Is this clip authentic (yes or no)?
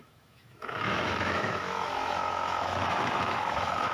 no